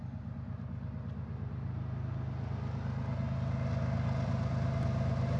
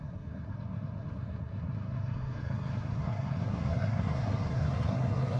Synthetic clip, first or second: second